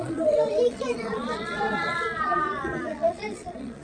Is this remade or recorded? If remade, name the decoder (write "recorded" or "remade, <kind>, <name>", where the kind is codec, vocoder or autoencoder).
remade, vocoder, Vocos